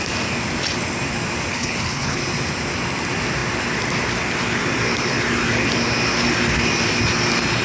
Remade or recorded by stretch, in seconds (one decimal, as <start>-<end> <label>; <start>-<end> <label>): 0.0-1.5 recorded; 1.5-2.2 remade; 2.2-7.6 recorded